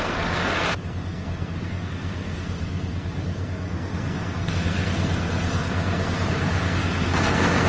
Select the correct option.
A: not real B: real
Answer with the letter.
A